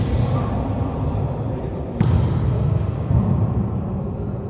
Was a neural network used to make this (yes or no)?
no